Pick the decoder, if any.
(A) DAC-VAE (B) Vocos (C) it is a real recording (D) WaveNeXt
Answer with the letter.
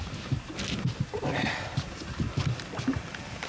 C